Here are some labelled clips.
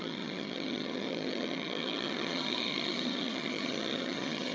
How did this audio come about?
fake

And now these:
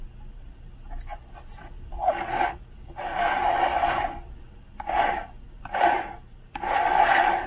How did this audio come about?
real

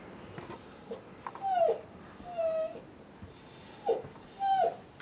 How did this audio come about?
real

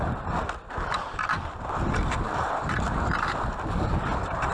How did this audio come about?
fake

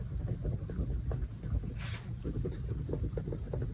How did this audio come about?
real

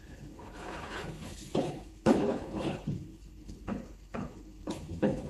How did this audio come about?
fake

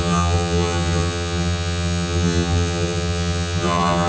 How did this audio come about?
fake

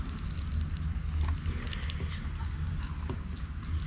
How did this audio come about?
real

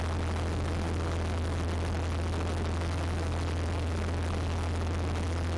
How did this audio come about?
real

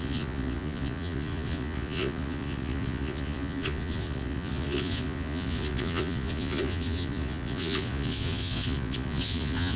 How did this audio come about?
fake